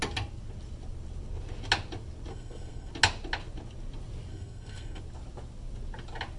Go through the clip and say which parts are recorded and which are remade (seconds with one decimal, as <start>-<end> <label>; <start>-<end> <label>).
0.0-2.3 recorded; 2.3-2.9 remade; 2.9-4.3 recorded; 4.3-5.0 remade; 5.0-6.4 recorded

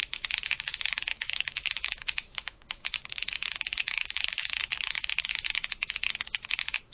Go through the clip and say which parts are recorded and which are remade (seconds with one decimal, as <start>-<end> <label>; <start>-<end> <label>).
0.0-1.1 recorded; 1.1-5.2 remade; 5.2-6.9 recorded

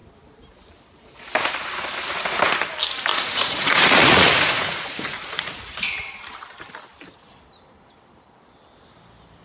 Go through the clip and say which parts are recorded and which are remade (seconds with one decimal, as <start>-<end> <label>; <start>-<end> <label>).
0.0-3.1 recorded; 3.1-5.8 remade; 5.8-9.4 recorded